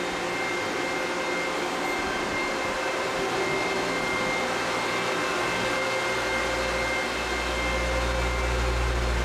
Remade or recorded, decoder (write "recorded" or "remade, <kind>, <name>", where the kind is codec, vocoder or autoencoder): recorded